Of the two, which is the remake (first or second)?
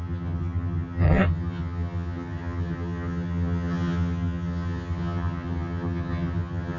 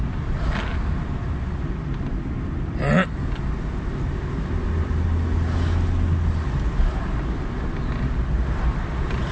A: first